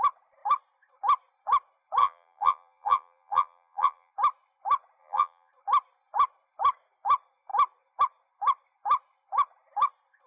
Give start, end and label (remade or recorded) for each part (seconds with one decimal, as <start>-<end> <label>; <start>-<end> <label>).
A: 0.0-2.0 recorded; 2.0-4.1 remade; 4.1-5.0 recorded; 5.0-5.5 remade; 5.5-10.3 recorded